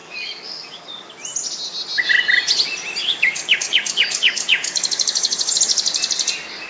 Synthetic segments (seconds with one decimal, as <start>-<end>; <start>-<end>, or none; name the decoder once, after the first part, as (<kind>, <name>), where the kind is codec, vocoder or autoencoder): 0.0-1.1 (codec, DAC); 3.0-5.6